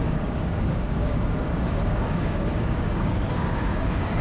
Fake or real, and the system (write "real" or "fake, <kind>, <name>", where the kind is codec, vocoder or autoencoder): fake, codec, DAC